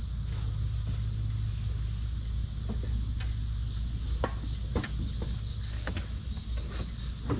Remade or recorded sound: recorded